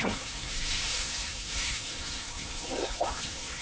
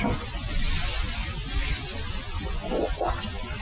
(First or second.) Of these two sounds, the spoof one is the first